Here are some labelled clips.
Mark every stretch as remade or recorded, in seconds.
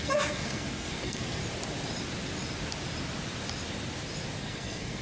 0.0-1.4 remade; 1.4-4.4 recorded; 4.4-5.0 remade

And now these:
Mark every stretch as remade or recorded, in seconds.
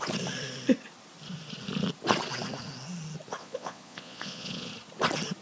0.0-3.4 recorded; 3.4-4.7 remade; 4.7-5.4 recorded